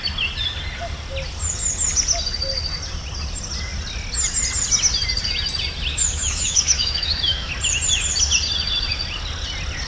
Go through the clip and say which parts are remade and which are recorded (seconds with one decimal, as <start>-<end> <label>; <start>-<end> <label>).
0.0-5.9 recorded; 5.9-7.5 remade; 7.5-9.9 recorded

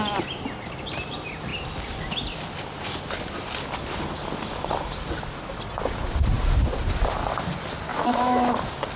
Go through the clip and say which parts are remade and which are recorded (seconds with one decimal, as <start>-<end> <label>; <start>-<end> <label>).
0.0-7.9 recorded; 7.9-8.5 remade; 8.5-9.0 recorded

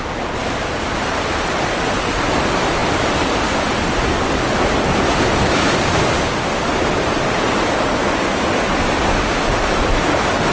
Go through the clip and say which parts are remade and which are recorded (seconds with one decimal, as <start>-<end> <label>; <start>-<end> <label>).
0.0-9.1 recorded; 9.1-9.7 remade; 9.7-10.5 recorded